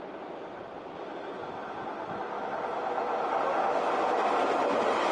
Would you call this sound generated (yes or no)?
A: no